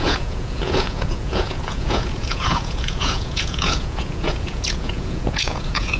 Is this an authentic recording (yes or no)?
no